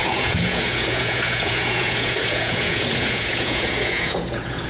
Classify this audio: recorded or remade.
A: remade